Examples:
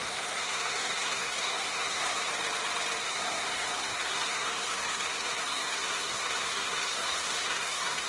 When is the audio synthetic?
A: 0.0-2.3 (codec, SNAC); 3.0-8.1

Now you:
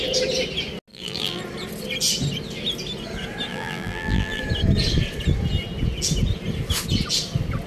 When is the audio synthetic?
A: 0.9-1.4 (vocoder, BigVGAN v2); 3.5-4.4

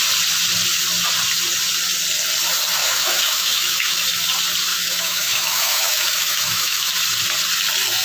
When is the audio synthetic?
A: 2.8-4.0 (autoencoder, DAC-VAE); 4.7-6.9

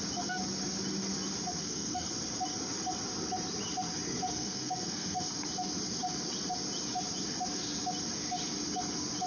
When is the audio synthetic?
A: 1.6-2.1 (codec, SNAC); 4.3-5.4

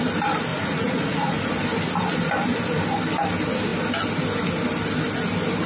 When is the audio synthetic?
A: 0.5-1.5 (vocoder, Vocos)

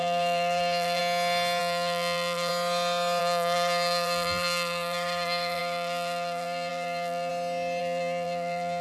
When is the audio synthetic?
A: 0.0-1.0 (vocoder, BigVGAN v2); 1.6-2.5; 3.2-7.3; 7.8-8.8

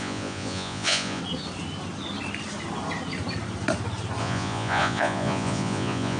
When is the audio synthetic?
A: 0.0-1.2 (vocoder, Vocos); 4.2-6.2